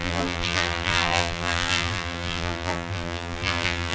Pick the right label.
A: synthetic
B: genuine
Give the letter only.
A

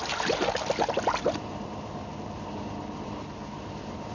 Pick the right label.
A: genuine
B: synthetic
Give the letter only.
A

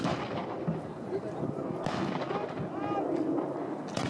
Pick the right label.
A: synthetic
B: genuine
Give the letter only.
B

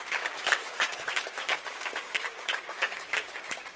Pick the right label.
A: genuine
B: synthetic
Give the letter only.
B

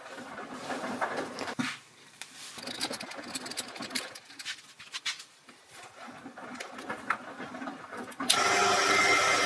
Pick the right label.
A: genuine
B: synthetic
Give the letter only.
A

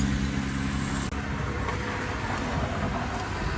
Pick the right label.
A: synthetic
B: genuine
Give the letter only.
B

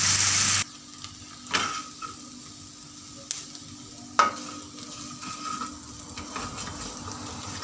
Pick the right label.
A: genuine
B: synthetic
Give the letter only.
A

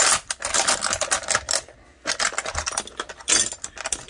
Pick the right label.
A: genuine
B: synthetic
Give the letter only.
A